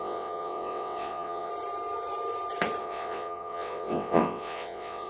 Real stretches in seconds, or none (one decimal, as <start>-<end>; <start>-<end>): 1.5-2.8

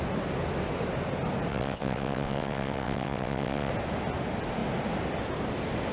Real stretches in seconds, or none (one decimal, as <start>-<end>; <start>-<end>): 0.0-1.5; 3.7-5.9